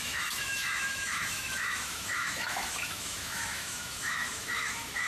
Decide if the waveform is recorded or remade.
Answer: remade